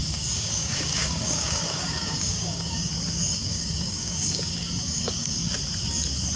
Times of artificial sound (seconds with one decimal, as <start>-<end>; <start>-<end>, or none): 0.0-2.9; 3.3-5.6